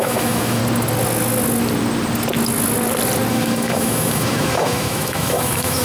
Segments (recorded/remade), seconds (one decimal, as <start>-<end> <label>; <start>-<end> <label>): 0.0-0.6 remade; 0.6-3.3 recorded; 3.3-5.8 remade